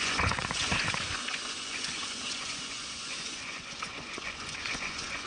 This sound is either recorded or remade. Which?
remade